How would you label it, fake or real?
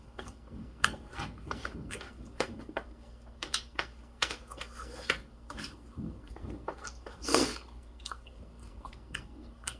fake